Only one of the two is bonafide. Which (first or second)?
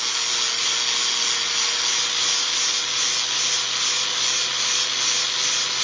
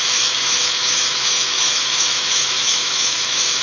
first